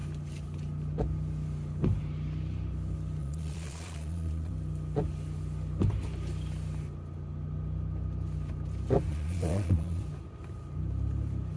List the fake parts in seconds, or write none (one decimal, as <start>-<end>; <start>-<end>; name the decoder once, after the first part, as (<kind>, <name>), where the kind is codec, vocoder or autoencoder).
3.2-4.5 (vocoder, Vocos); 9.1-10.0